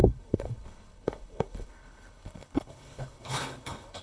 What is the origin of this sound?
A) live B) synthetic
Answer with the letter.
B